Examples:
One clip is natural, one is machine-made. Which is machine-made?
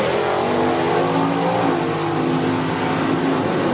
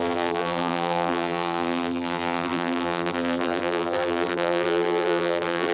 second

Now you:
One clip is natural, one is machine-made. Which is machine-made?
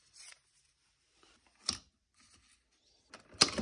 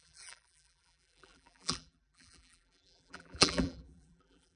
second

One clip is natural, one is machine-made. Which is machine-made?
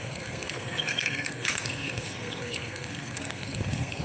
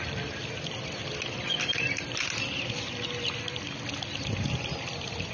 first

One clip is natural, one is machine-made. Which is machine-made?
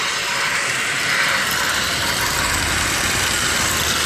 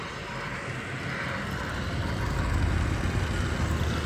first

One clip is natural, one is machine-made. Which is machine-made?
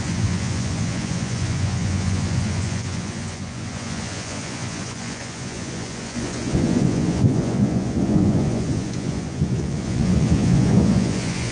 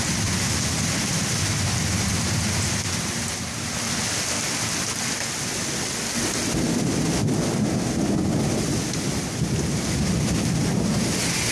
first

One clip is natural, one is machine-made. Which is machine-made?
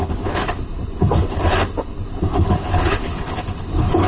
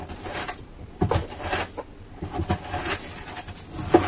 first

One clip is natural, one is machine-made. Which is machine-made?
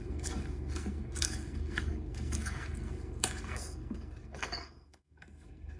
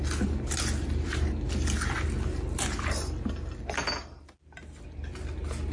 first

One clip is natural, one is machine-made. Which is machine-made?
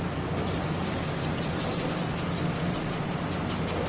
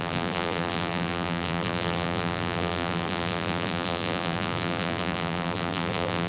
second